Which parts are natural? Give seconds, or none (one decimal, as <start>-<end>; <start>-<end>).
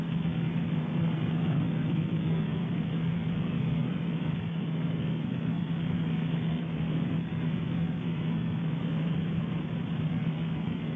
9.6-10.1